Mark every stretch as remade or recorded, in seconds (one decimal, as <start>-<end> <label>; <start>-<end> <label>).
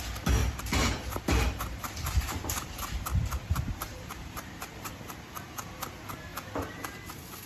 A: 0.0-0.4 recorded; 0.4-4.9 remade; 4.9-7.5 recorded